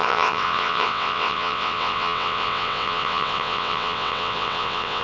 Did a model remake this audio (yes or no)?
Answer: yes